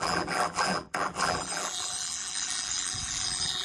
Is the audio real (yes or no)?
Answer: no